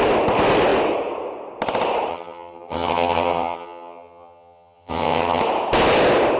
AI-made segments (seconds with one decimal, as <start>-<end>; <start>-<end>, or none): 2.1-5.4